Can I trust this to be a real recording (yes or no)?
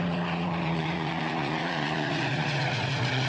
no